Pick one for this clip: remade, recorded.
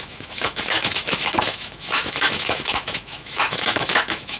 remade